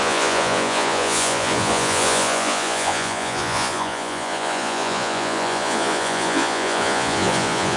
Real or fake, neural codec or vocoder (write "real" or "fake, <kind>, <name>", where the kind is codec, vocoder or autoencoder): fake, vocoder, Vocos